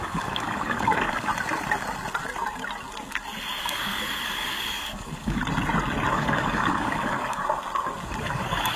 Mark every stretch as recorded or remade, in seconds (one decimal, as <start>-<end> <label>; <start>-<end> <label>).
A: 0.0-1.3 remade; 1.3-3.6 recorded; 3.6-5.4 remade; 5.4-6.1 recorded; 6.1-7.4 remade; 7.4-8.2 recorded; 8.2-8.8 remade